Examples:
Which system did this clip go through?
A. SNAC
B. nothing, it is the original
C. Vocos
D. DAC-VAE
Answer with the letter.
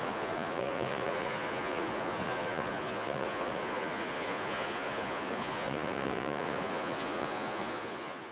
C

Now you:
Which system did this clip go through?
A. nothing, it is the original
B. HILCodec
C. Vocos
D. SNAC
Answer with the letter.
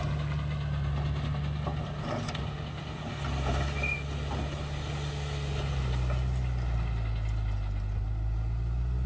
A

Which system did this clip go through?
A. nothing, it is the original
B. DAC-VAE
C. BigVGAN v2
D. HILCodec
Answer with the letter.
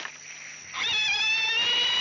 A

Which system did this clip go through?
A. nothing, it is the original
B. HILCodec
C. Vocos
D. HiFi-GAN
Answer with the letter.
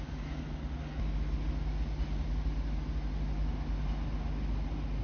A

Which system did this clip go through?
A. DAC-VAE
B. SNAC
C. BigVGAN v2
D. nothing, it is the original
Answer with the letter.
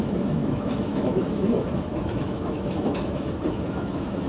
A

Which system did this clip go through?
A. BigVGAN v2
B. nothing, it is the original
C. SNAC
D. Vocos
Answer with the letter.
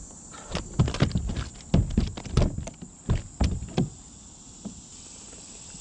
B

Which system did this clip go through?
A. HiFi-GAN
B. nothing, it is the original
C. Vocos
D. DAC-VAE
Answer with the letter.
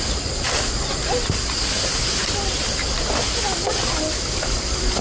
B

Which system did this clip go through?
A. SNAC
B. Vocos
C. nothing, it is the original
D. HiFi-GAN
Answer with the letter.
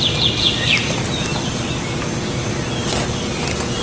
C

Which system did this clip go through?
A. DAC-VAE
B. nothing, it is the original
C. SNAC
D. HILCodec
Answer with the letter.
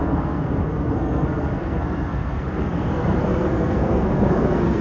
C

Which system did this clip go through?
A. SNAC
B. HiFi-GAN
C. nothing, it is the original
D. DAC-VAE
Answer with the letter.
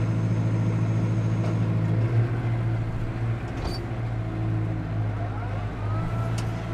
C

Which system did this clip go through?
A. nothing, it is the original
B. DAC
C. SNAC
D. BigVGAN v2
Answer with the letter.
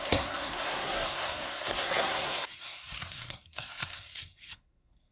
C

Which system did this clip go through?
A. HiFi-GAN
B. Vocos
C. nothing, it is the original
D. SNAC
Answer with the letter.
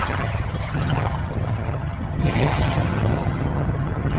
A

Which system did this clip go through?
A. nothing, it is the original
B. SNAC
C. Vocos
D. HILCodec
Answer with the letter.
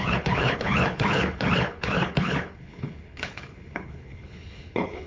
D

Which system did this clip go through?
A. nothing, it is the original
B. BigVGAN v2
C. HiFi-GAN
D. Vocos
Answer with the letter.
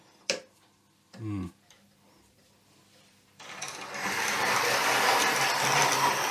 A